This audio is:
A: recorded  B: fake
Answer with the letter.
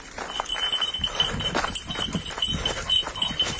A